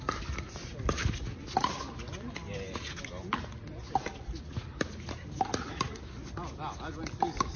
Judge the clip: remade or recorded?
recorded